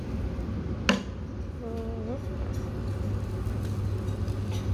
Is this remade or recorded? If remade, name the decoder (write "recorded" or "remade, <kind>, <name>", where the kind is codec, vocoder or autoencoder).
recorded